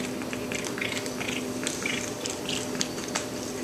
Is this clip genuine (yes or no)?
yes